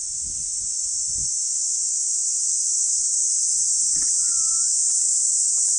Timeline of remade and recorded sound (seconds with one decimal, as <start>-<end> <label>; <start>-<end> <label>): 0.0-5.8 recorded